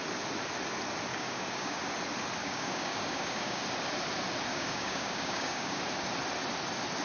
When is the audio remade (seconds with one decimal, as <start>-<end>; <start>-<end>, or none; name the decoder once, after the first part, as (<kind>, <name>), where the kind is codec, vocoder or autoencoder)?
1.1-1.8 (codec, DAC); 2.4-3.6; 4.5-5.8